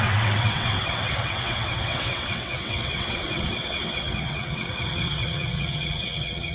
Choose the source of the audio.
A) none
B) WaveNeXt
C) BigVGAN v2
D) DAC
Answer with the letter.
B